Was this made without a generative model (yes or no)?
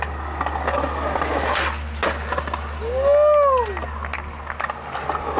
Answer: yes